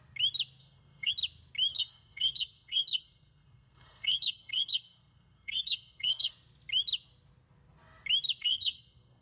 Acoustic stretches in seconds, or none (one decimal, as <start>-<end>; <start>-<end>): 0.0-0.6; 1.1-1.7; 6.3-8.4